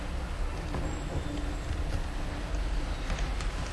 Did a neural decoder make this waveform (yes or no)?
no